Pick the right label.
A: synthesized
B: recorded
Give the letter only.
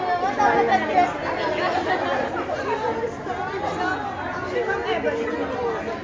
B